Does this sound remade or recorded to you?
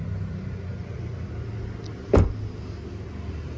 recorded